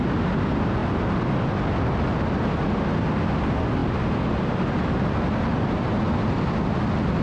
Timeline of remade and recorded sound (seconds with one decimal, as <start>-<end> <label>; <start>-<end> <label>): 0.0-7.2 recorded